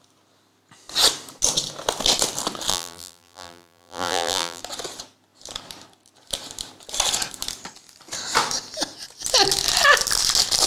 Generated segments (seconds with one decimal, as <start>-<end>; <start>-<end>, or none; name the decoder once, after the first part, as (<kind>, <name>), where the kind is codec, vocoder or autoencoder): 2.7-4.6 (vocoder, BigVGAN v2)